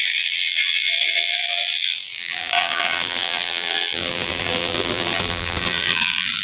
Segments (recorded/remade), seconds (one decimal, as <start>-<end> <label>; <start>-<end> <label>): 0.0-6.4 remade